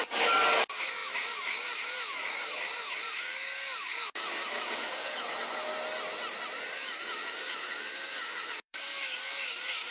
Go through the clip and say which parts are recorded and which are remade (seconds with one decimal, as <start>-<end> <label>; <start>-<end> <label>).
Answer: 0.0-5.7 remade; 5.7-6.7 recorded; 6.7-9.9 remade